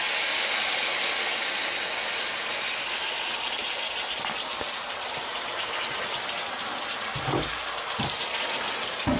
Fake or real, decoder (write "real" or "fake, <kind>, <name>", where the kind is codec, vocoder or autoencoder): real